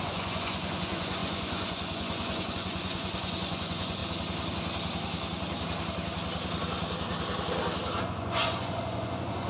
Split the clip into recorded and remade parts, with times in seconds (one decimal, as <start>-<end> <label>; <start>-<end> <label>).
0.0-4.0 remade; 4.0-8.0 recorded; 8.0-9.5 remade